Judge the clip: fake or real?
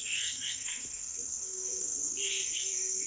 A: fake